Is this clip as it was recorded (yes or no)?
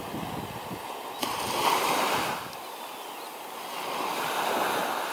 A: yes